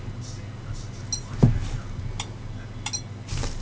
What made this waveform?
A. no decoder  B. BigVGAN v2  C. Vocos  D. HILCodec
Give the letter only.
A